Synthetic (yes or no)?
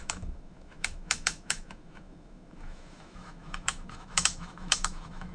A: yes